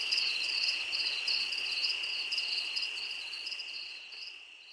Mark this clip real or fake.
fake